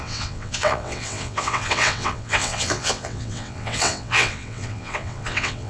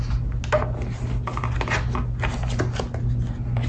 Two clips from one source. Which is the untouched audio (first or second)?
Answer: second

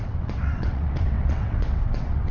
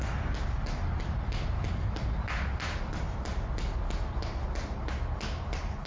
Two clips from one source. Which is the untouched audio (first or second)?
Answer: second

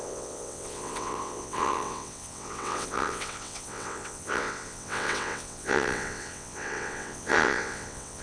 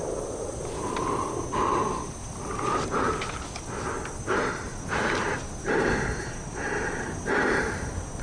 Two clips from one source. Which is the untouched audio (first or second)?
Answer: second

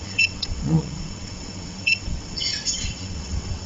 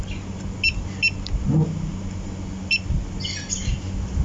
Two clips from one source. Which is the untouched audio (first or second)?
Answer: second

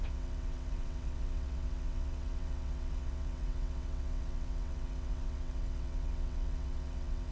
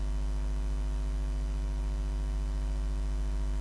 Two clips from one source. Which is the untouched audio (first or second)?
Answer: second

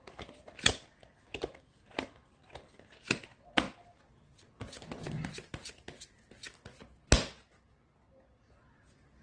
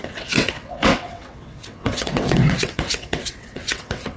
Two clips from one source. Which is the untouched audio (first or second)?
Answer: first